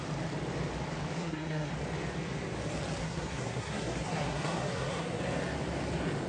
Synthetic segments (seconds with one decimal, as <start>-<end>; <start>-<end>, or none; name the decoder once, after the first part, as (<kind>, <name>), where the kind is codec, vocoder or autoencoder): 1.2-1.7 (codec, SNAC); 3.0-5.2